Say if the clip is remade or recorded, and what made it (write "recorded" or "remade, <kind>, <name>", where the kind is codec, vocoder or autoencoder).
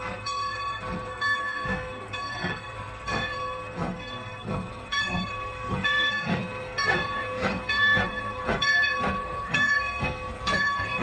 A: remade, codec, SNAC